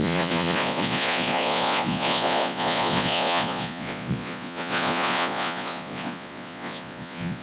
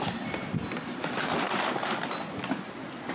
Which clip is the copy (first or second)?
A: first